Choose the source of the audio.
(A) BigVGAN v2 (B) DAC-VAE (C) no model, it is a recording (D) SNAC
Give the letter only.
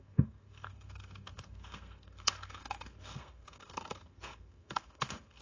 D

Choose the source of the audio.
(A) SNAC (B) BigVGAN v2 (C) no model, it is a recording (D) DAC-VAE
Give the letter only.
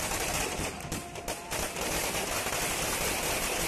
C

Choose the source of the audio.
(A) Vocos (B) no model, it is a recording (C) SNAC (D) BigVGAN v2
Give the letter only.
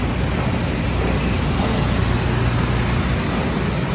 B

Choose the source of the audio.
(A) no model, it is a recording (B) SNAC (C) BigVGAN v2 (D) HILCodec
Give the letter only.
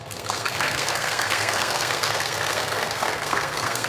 B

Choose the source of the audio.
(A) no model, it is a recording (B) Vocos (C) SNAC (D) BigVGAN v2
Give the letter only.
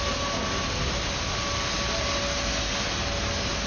A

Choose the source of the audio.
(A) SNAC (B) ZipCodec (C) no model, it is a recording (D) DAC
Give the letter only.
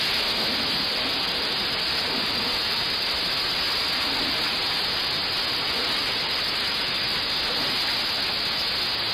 C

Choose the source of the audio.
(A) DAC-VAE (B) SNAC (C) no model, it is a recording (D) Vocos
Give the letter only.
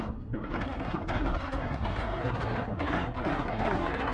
B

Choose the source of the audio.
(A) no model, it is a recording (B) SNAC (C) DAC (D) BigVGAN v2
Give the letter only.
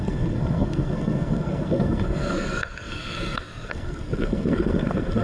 B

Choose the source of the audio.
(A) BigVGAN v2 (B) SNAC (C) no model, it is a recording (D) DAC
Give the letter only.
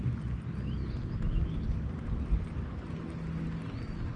C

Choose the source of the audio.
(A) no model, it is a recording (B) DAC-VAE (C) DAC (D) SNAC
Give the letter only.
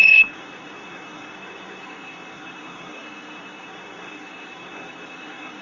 D